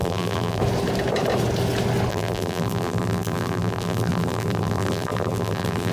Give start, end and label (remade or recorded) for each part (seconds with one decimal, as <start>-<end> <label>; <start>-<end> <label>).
0.0-0.6 remade; 0.6-2.1 recorded; 2.1-5.9 remade